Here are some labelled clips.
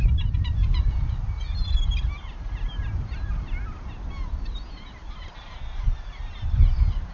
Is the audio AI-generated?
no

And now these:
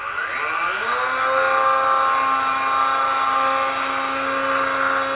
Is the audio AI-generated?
no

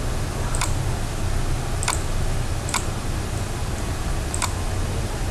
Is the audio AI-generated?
no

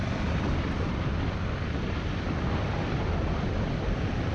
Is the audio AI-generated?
no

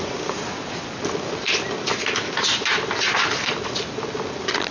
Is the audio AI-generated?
no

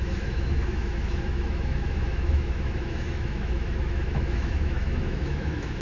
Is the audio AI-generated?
yes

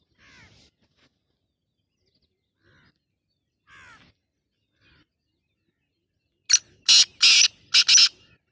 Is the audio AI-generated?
no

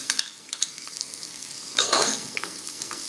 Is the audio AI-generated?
yes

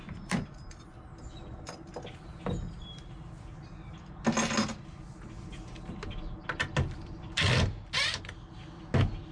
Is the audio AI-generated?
no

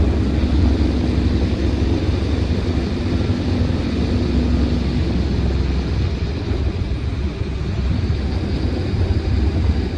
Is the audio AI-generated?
no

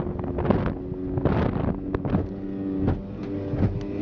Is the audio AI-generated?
no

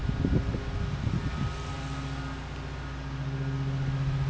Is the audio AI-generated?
no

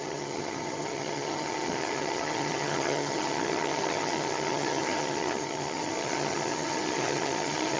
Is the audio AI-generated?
yes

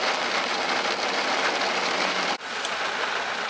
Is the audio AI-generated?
no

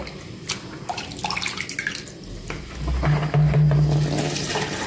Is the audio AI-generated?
no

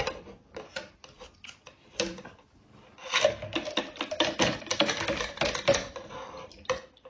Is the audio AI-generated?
no